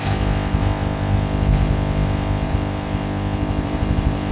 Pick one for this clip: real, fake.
fake